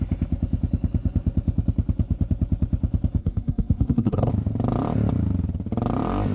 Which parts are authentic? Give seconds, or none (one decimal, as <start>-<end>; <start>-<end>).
0.0-3.2; 4.3-6.3